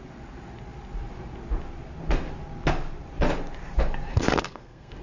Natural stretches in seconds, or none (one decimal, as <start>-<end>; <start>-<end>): 0.0-4.1